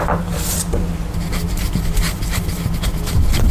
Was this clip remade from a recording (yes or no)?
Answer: no